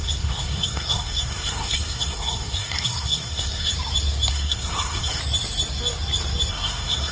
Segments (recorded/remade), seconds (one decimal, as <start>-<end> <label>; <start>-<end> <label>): 0.0-3.7 remade; 3.7-4.3 recorded; 4.3-5.2 remade; 5.2-6.5 recorded; 6.5-7.1 remade